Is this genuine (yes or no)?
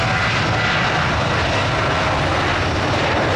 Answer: yes